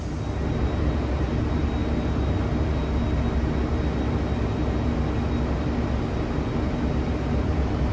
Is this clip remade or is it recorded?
recorded